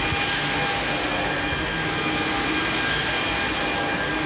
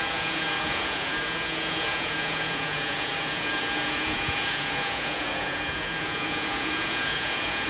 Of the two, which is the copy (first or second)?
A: second